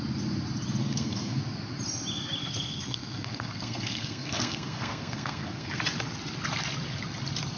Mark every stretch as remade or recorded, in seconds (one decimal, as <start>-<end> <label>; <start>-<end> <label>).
0.0-0.8 recorded; 0.8-1.4 remade; 1.4-2.4 recorded; 2.4-5.8 remade; 5.8-7.6 recorded